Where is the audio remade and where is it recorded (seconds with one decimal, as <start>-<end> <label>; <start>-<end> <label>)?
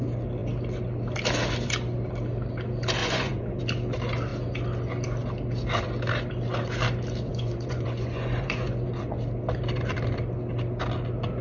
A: 0.0-3.0 recorded; 3.0-3.6 remade; 3.6-7.3 recorded; 7.3-9.2 remade; 9.2-11.4 recorded